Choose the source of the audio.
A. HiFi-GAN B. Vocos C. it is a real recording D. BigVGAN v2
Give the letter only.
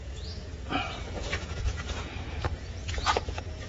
B